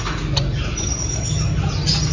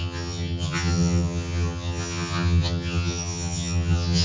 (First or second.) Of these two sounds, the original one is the first